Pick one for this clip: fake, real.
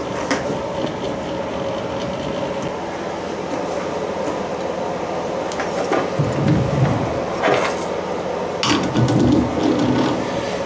real